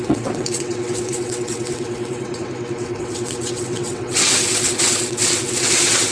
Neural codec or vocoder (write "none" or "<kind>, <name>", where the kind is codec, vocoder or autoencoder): vocoder, WaveNeXt